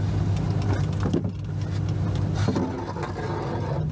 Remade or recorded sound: recorded